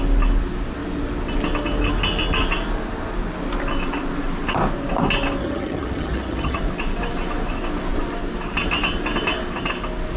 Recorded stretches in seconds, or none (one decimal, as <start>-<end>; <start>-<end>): 0.0-5.4; 6.6-10.2

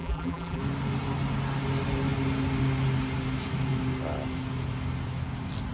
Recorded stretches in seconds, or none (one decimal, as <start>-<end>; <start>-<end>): 0.6-5.7

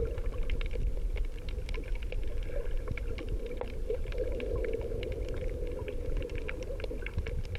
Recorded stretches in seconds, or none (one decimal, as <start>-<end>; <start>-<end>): 0.0-5.8; 6.4-7.6

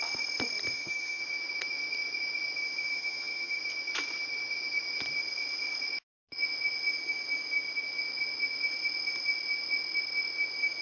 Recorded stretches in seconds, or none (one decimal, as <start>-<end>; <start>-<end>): 0.0-0.7; 1.2-2.9; 3.6-10.8

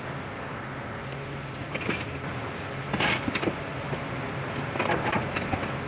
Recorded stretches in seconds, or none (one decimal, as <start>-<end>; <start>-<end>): 0.0-5.9

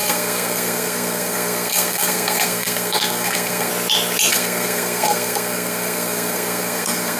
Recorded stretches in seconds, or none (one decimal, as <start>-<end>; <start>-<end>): 3.7-4.3

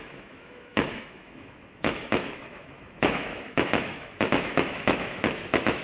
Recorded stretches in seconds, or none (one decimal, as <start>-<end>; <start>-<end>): none